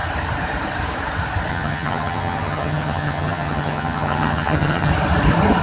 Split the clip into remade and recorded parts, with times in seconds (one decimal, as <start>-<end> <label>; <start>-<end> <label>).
0.0-1.5 recorded; 1.5-4.9 remade; 4.9-5.6 recorded